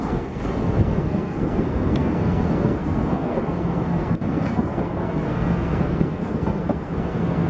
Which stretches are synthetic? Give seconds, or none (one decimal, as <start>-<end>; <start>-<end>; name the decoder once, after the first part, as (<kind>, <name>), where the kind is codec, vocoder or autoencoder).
0.0-7.5 (codec, SNAC)